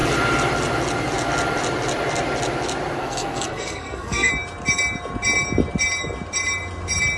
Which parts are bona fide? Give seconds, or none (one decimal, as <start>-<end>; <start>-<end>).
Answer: 0.0-3.0; 4.3-7.2